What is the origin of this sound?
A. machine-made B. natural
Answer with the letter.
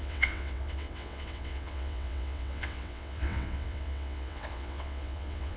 A